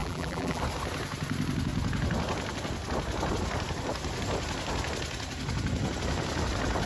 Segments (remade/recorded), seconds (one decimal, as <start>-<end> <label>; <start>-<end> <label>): 0.0-0.6 remade; 0.6-6.9 recorded